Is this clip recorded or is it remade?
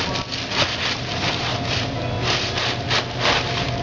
recorded